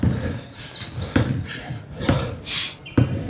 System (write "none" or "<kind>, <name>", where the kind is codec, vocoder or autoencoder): none